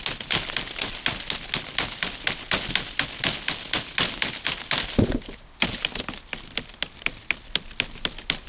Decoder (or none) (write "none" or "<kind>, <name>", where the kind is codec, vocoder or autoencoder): none